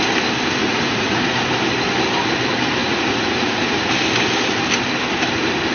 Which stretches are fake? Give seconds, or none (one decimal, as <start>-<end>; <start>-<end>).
0.6-1.2; 2.8-3.9